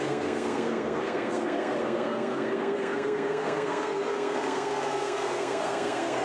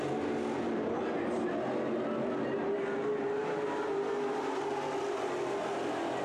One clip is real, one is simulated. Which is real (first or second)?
second